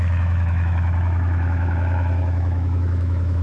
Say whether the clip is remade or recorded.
remade